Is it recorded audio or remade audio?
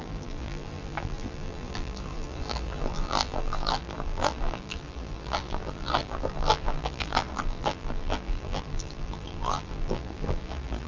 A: remade